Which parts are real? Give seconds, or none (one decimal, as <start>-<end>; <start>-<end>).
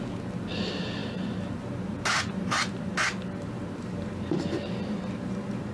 0.0-5.7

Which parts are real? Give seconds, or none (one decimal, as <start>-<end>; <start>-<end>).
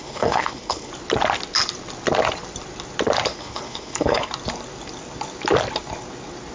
0.9-3.3; 4.3-6.5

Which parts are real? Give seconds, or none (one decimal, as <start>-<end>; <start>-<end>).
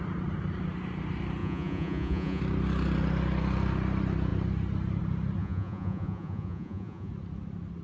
0.0-1.4; 2.4-5.4; 7.1-7.8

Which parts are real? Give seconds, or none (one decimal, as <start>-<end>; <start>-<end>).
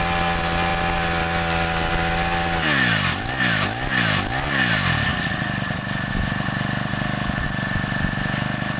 0.0-8.8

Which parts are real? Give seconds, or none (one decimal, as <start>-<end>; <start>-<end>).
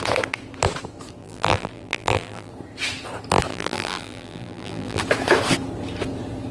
0.0-1.2; 2.5-3.5; 5.0-6.5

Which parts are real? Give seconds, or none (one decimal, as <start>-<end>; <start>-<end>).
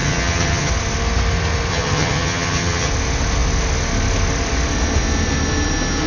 0.7-1.7; 2.9-6.1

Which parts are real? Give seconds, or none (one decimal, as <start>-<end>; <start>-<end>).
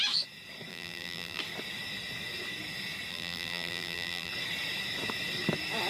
0.0-0.7; 1.4-3.1; 4.3-5.9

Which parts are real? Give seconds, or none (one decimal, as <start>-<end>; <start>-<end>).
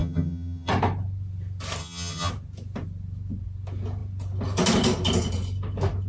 0.7-1.8; 2.3-6.1